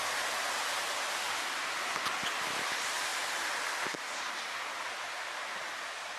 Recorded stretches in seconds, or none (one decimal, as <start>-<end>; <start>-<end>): 0.0-6.2